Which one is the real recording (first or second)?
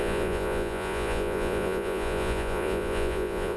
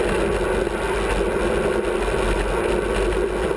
second